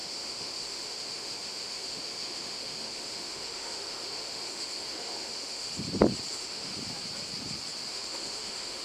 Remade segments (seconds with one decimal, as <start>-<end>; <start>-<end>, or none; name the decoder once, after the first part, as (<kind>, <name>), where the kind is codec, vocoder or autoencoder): 0.0-5.7 (autoencoder, DAC-VAE); 6.3-6.7; 7.9-8.8

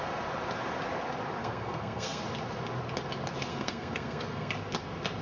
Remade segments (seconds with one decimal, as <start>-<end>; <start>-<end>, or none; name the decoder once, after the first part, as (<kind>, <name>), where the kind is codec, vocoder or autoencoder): 1.4-2.2 (codec, SNAC); 3.5-4.5

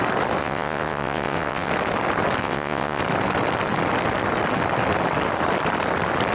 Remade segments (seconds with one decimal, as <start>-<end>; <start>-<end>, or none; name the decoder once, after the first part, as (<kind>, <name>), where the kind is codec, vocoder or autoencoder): 0.4-1.7 (vocoder, WaveNeXt); 2.4-3.0

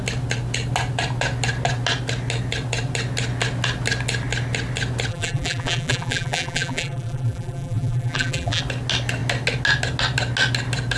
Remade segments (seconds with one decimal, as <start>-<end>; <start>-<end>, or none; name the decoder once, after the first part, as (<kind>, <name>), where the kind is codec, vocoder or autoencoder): 5.1-8.6 (vocoder, BigVGAN v2)

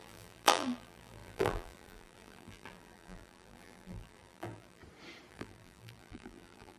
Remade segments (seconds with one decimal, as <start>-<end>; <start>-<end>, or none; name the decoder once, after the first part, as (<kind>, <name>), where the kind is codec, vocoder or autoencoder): 0.0-4.8 (vocoder, BigVGAN v2); 5.3-6.8

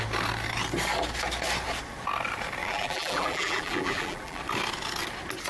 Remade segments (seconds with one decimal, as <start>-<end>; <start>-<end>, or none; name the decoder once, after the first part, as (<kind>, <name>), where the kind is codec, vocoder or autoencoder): 2.6-4.4 (vocoder, BigVGAN v2)

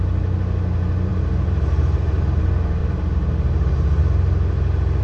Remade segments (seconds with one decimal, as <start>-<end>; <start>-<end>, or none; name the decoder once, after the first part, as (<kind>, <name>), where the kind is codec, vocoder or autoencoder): 1.1-2.4 (vocoder, BigVGAN v2); 2.8-4.0